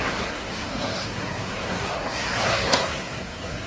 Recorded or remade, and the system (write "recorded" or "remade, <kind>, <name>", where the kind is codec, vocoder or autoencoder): remade, codec, SNAC